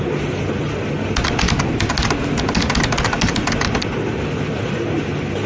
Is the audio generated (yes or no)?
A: no